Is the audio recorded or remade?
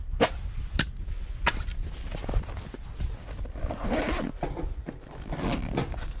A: recorded